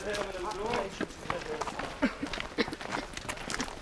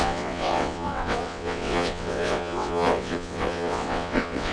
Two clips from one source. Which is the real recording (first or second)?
first